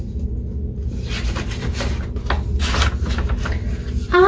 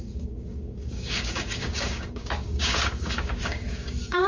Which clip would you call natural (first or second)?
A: first